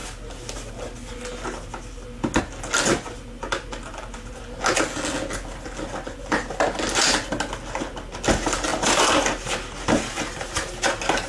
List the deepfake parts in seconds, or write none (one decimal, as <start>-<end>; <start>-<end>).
none